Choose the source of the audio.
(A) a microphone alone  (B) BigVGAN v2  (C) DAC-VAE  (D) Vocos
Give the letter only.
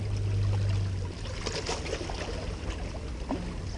A